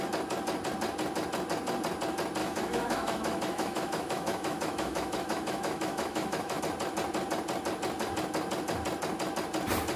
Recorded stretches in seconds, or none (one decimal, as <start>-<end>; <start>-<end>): 0.0-2.4; 6.6-10.0